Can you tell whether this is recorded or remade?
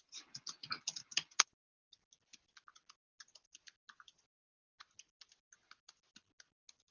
recorded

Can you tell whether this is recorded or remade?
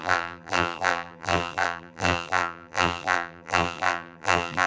remade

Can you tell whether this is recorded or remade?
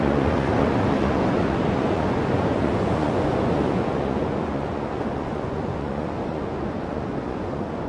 remade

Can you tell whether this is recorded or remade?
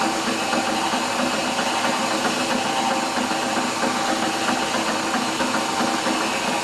recorded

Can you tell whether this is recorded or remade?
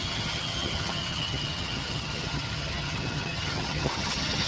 remade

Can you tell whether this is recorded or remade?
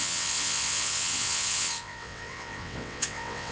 remade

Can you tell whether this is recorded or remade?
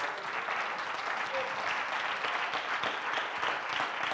recorded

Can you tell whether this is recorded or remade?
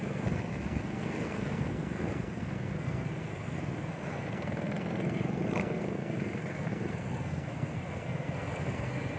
remade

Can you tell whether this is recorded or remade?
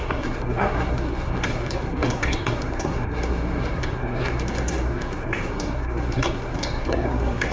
remade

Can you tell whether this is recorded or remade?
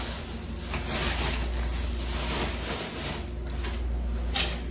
recorded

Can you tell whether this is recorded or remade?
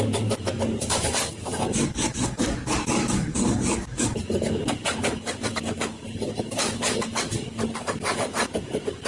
remade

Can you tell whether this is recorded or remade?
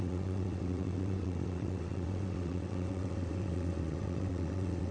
remade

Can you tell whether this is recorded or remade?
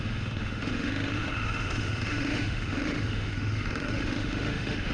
remade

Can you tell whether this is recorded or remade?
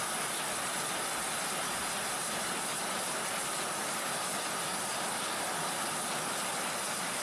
recorded